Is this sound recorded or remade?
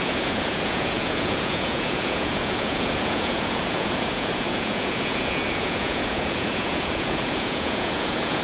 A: remade